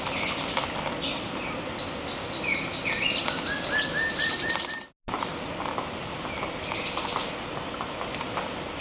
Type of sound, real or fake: real